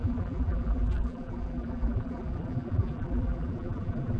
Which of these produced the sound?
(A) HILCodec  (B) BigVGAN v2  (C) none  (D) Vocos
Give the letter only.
B